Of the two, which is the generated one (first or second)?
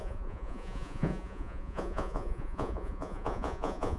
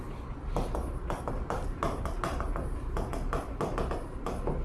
first